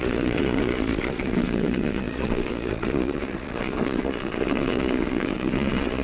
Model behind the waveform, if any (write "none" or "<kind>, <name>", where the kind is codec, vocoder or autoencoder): vocoder, Vocos